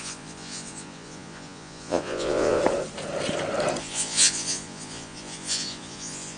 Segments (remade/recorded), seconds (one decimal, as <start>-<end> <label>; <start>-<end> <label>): 0.0-2.6 remade; 2.6-3.8 recorded; 3.8-6.4 remade